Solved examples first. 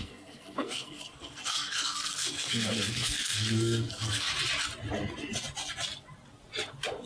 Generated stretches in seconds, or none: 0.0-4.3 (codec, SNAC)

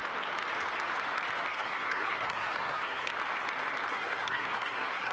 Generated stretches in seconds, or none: 1.5-3.1 (codec, SNAC); 3.9-5.1

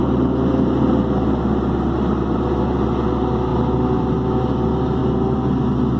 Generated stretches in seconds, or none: none